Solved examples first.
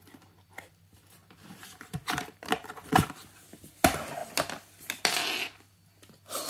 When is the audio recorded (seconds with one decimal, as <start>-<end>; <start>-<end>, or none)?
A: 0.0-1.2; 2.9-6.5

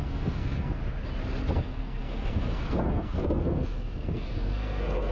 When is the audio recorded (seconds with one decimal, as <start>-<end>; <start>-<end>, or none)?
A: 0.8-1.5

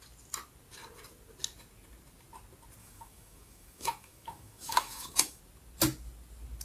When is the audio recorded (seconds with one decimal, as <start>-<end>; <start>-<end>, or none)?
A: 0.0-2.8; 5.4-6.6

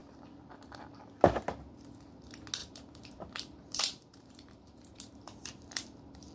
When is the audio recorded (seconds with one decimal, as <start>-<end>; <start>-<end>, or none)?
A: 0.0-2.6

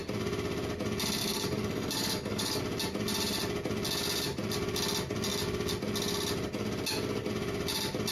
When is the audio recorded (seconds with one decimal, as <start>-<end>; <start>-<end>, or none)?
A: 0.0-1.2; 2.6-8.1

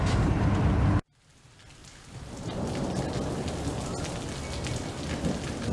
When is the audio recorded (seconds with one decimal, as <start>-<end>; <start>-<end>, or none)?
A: 0.0-5.7

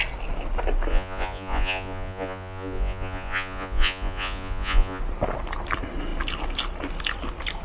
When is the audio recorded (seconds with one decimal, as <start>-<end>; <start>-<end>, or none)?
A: 0.0-0.9; 5.0-7.6

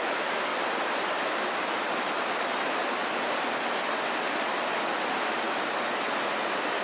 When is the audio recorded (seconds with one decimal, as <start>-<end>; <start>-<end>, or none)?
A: 0.0-6.8